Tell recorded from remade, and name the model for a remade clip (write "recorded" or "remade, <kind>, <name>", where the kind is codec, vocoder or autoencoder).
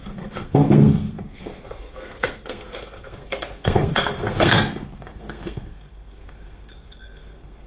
remade, codec, SNAC